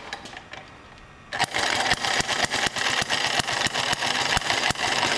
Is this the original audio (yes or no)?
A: yes